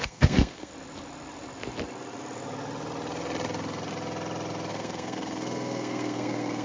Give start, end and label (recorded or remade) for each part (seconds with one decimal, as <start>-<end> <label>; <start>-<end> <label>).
0.0-0.7 remade; 0.7-4.7 recorded; 4.7-6.6 remade